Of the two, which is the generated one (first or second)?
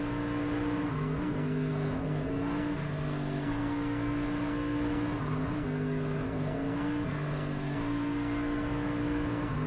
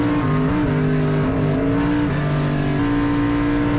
first